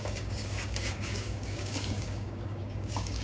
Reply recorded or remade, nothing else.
remade